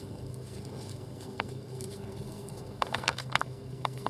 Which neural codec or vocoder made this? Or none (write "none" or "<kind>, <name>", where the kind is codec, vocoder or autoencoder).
codec, SNAC